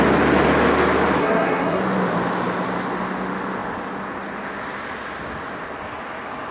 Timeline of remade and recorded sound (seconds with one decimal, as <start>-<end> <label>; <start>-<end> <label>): 0.0-1.2 recorded; 1.2-1.8 remade; 1.8-6.5 recorded